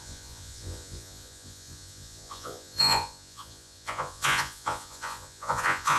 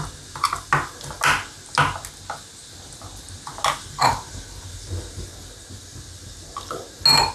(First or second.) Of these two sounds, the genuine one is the second